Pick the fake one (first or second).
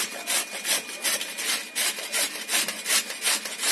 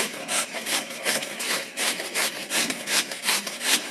second